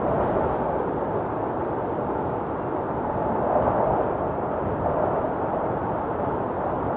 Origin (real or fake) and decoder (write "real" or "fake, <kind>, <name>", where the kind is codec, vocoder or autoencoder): real